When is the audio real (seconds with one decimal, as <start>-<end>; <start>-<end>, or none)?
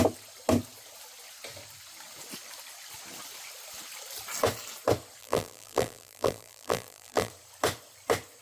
0.0-5.2; 7.3-8.4